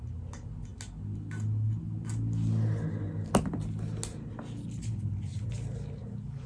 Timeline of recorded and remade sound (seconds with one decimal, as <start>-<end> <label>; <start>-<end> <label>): 0.0-6.5 recorded